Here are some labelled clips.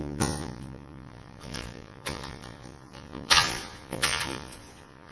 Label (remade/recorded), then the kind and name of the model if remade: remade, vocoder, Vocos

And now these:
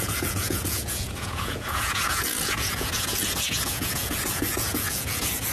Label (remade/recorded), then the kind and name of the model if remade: remade, vocoder, Vocos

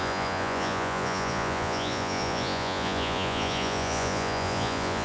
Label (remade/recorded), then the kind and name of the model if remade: remade, vocoder, Vocos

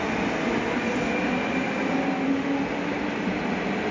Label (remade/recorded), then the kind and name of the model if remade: recorded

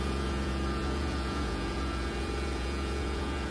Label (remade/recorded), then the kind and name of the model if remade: remade, vocoder, Vocos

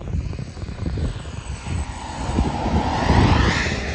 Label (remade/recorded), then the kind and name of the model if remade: remade, vocoder, Vocos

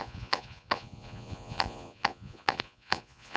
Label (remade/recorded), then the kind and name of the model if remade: remade, vocoder, Vocos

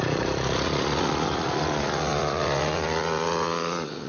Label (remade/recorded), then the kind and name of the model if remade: remade, vocoder, Vocos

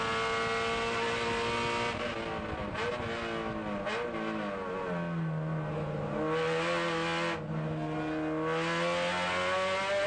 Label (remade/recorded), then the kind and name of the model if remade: recorded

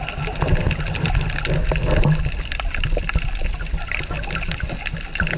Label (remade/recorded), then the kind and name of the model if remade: recorded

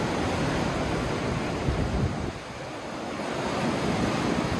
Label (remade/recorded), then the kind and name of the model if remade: recorded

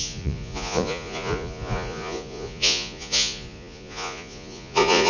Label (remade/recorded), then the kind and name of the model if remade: remade, vocoder, Vocos